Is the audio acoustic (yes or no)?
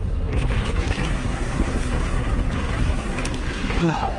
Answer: no